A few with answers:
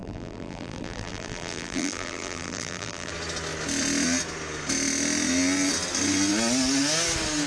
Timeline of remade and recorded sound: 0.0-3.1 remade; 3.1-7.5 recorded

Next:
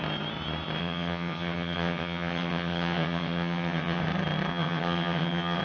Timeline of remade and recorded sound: 0.0-0.8 recorded; 0.8-4.0 remade; 4.0-4.5 recorded; 4.5-5.6 remade

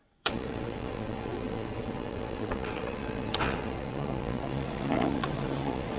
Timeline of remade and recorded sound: 0.0-6.0 remade